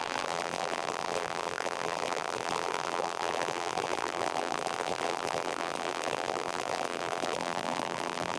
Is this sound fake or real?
fake